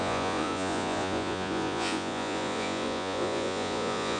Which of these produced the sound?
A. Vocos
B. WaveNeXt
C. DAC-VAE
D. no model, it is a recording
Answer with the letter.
A